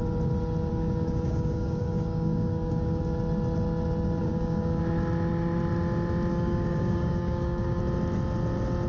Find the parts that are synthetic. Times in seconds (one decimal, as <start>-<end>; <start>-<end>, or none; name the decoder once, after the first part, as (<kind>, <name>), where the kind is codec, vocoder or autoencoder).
0.7-3.0 (codec, DAC); 4.2-4.8; 6.3-7.8